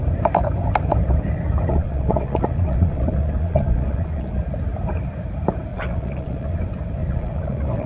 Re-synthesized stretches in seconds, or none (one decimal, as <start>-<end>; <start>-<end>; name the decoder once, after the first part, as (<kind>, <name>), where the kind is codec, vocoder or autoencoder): 1.7-4.4 (vocoder, Vocos); 5.7-6.6; 7.0-7.9